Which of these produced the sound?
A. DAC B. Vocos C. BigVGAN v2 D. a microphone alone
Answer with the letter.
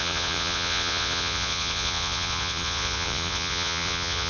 B